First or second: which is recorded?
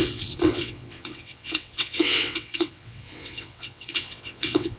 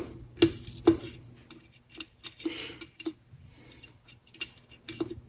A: second